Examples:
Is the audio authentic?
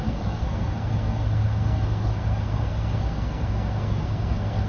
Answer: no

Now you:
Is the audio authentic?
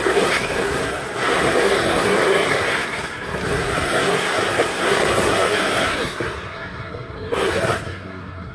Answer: no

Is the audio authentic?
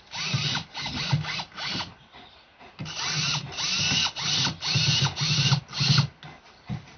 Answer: yes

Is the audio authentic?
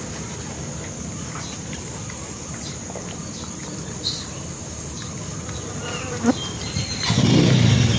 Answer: yes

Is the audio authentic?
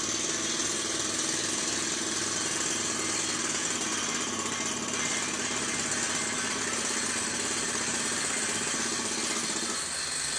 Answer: yes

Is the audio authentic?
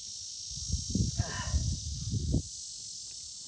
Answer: yes